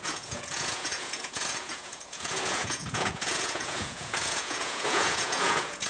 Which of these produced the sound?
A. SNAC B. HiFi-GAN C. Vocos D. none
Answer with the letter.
C